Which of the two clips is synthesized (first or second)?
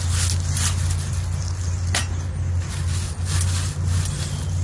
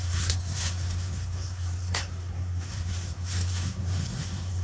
second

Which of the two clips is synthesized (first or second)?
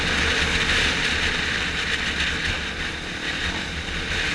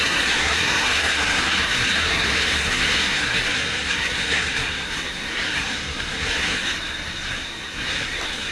second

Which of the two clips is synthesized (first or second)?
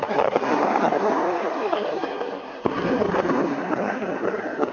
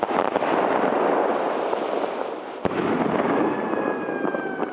first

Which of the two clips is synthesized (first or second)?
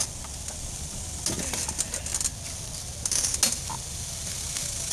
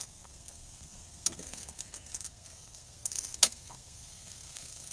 second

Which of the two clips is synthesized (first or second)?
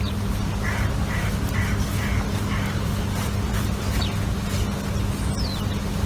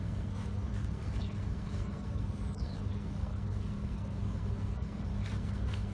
second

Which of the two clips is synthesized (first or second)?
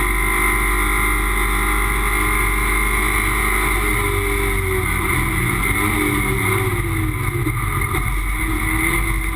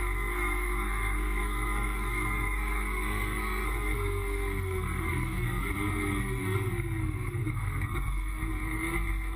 second